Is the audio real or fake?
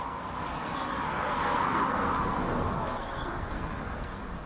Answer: fake